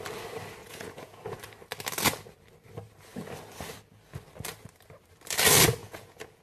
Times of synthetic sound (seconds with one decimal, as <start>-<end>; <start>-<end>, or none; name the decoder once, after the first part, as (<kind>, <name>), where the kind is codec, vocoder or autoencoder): 0.6-1.4 (vocoder, Vocos); 5.8-6.4